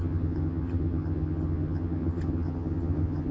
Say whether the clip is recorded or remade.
remade